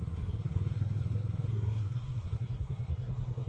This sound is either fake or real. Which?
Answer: fake